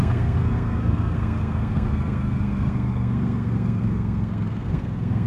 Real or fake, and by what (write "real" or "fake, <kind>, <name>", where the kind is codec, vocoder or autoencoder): fake, codec, SNAC